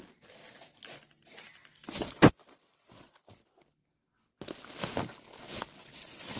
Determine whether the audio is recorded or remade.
recorded